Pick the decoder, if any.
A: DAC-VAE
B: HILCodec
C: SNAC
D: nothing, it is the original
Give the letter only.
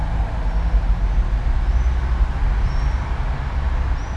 D